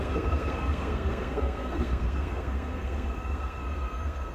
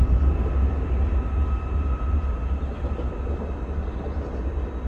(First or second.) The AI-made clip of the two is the first